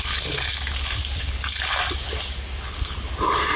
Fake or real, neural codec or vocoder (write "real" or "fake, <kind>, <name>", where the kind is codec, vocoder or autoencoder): real